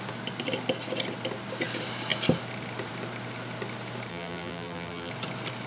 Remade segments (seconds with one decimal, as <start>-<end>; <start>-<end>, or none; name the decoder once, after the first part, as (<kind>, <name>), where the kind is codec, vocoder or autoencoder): 4.1-5.1 (vocoder, BigVGAN v2)